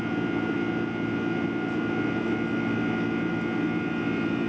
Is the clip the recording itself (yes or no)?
yes